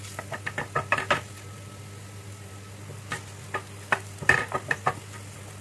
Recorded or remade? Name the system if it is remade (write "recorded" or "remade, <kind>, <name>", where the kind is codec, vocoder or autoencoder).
recorded